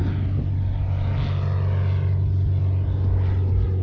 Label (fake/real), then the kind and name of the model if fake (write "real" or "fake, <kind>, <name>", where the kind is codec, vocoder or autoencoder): real